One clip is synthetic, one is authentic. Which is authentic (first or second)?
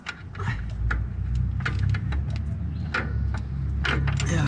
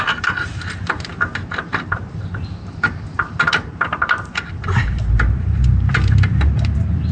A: first